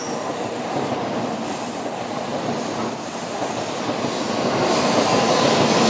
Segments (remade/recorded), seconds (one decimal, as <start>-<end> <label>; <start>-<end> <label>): 0.0-5.9 recorded

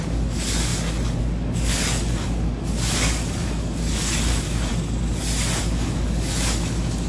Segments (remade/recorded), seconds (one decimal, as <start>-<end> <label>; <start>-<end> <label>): 0.0-0.7 remade; 0.7-1.2 recorded; 1.2-4.7 remade; 4.7-5.6 recorded; 5.6-7.1 remade

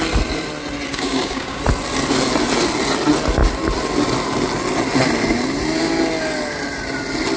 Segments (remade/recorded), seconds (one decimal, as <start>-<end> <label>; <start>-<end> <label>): 0.0-0.9 recorded; 0.9-1.6 remade; 1.6-7.4 recorded

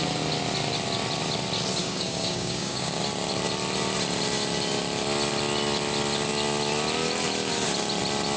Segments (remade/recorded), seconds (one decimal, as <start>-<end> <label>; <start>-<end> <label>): 0.0-1.8 recorded; 1.8-3.0 remade; 3.0-8.4 recorded

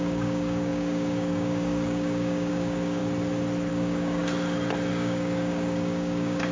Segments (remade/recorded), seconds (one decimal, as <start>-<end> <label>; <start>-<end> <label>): 0.0-3.0 remade; 3.0-3.7 recorded; 3.7-4.2 remade; 4.2-4.9 recorded; 4.9-6.5 remade